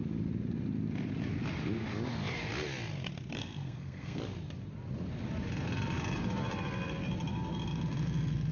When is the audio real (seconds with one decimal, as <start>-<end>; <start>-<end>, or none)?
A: 0.0-3.4; 4.2-8.5